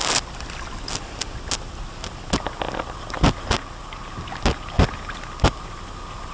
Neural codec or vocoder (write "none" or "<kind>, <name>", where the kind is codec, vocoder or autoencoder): none